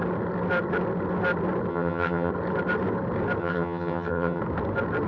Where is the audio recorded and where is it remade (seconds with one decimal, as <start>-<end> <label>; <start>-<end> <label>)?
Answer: 0.0-1.7 recorded; 1.7-2.3 remade; 2.3-3.4 recorded; 3.4-4.4 remade; 4.4-5.1 recorded